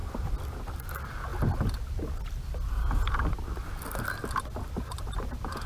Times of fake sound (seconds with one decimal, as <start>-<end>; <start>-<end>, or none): 0.0-0.9